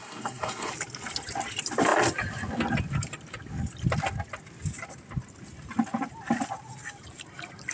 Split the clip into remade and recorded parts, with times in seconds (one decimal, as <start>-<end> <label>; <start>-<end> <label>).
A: 0.0-0.7 remade; 0.7-7.7 recorded